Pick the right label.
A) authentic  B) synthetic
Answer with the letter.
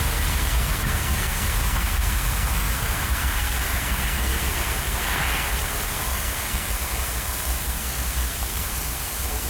B